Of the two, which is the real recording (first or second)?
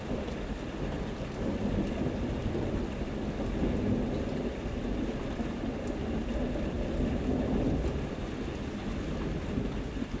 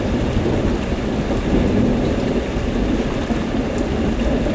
first